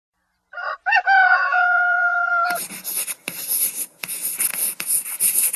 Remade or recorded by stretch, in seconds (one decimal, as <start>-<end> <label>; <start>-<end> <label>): 0.0-1.3 recorded; 1.3-2.3 remade; 2.3-5.6 recorded